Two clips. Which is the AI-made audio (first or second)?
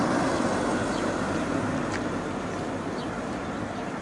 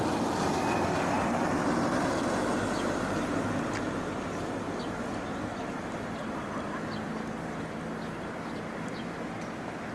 first